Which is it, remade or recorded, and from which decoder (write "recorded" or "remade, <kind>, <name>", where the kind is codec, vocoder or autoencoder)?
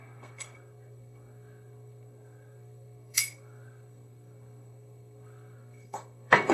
remade, codec, SNAC